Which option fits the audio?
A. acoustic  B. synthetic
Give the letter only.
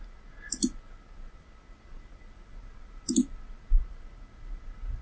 A